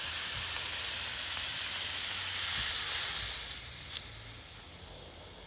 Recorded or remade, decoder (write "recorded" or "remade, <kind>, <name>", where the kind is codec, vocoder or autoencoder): recorded